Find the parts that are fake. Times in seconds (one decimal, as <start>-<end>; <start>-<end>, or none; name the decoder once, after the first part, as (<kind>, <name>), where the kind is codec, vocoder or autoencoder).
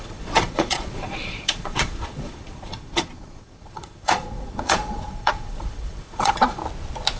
0.0-6.6 (vocoder, Vocos)